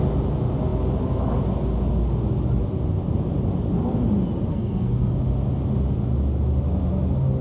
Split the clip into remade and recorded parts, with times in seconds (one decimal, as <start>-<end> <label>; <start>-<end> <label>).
0.0-4.5 recorded; 4.5-5.1 remade; 5.1-7.4 recorded